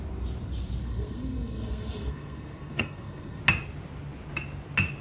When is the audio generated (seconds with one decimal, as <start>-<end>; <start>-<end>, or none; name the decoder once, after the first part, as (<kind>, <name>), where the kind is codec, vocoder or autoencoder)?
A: 0.8-3.4 (codec, SNAC)